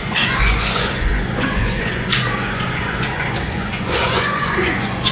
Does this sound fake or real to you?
fake